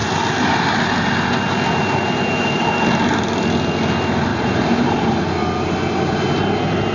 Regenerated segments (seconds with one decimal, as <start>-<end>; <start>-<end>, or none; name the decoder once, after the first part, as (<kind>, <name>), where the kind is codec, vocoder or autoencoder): 4.3-5.2 (vocoder, BigVGAN v2)